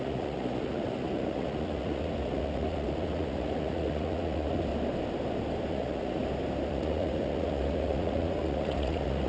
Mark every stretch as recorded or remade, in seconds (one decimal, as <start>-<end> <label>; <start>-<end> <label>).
0.0-4.7 remade; 4.7-5.7 recorded; 5.7-6.2 remade; 6.2-6.7 recorded; 6.7-9.3 remade